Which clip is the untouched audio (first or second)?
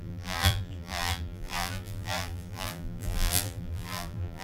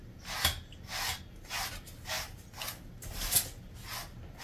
second